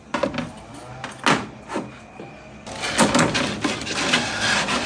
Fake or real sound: real